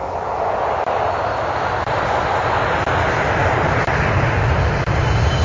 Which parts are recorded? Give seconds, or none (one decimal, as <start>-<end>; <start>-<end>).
0.0-5.4